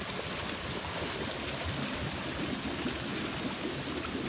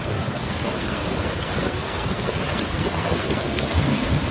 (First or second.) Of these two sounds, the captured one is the first